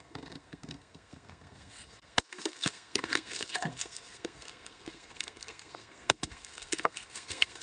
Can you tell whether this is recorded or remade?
remade